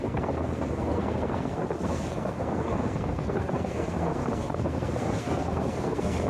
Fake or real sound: fake